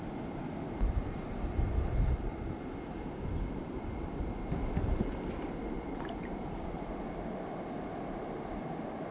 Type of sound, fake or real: real